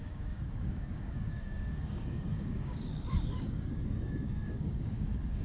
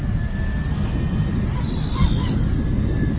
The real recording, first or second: second